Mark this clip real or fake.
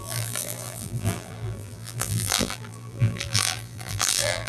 fake